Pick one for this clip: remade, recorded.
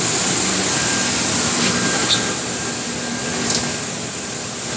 recorded